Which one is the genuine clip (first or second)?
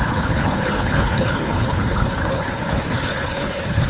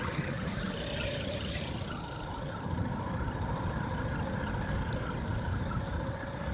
second